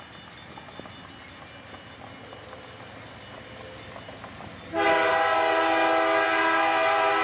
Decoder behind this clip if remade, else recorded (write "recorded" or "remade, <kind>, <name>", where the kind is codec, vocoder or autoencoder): recorded